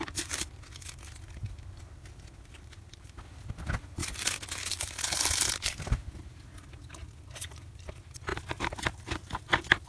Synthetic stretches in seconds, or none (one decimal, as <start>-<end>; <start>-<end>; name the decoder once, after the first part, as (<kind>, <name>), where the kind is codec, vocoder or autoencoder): none